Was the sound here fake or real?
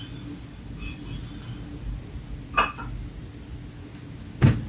real